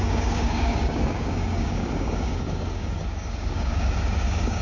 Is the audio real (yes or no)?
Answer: no